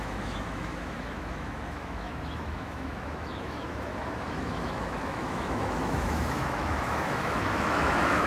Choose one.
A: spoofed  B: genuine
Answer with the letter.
A